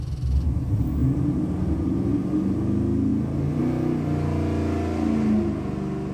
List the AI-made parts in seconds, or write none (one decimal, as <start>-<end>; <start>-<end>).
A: none